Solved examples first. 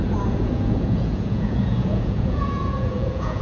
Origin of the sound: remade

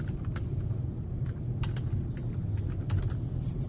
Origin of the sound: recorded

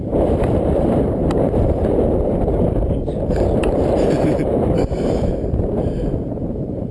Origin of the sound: remade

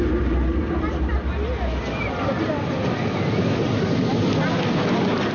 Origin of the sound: recorded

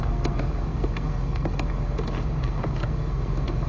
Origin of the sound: remade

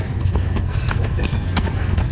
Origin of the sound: remade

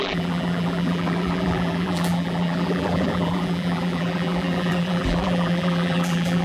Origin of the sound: remade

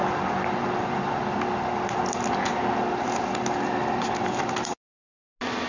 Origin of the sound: recorded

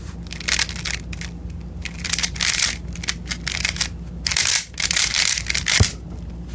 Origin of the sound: recorded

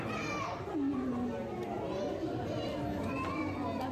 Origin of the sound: recorded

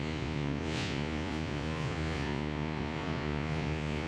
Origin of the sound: remade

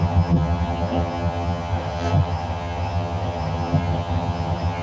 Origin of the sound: remade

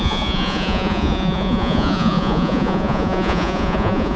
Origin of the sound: remade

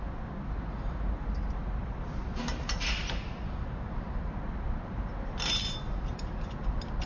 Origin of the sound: recorded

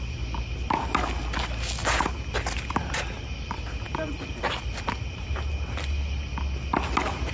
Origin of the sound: recorded